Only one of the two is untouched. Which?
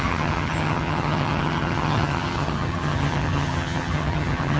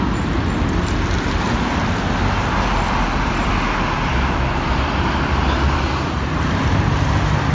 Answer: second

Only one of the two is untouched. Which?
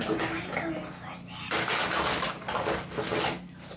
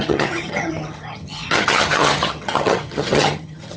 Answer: first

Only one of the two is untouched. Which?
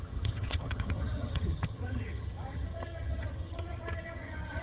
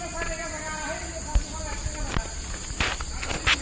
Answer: second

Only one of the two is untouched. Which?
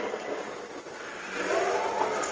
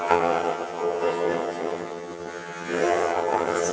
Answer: first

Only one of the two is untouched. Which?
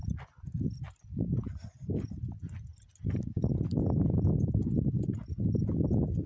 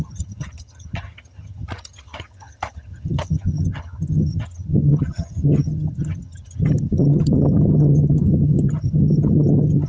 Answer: first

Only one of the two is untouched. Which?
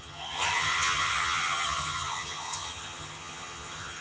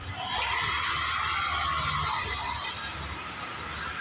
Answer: second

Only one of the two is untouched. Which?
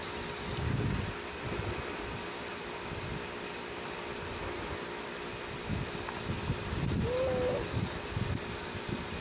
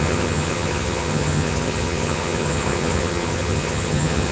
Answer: first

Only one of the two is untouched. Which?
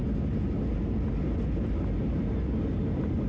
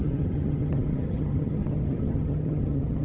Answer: first